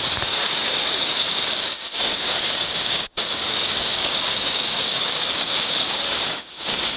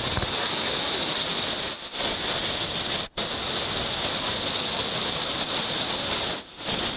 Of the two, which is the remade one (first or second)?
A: first